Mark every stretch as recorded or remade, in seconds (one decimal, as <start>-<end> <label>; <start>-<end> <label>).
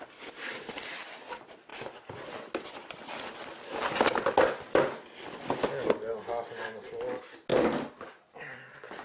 0.0-9.0 recorded